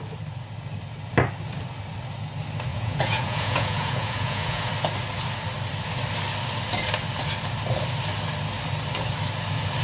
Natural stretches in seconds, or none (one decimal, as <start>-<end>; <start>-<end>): 0.0-2.7; 4.7-9.8